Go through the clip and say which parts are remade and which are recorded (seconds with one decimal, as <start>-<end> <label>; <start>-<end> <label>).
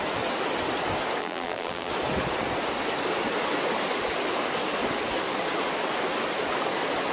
0.0-1.2 recorded; 1.2-1.9 remade; 1.9-7.1 recorded